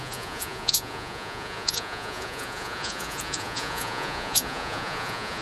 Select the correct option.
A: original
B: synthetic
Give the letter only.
B